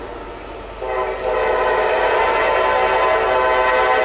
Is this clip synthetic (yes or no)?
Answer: no